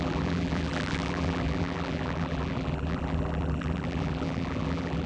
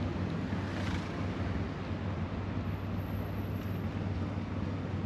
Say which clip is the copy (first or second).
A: first